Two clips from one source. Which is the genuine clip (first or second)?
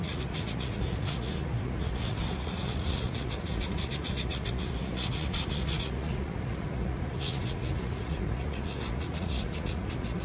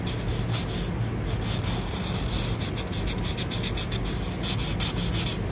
second